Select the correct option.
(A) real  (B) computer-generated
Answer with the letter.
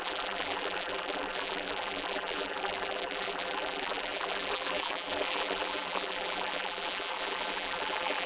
B